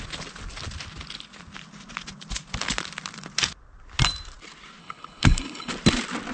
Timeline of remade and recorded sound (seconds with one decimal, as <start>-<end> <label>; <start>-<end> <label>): 0.0-4.8 recorded; 4.8-5.7 remade; 5.7-6.3 recorded